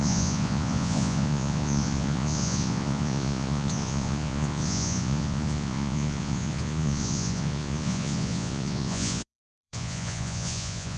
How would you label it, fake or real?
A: fake